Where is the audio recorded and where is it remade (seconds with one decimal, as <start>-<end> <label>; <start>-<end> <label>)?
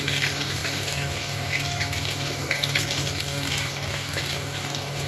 0.0-5.1 remade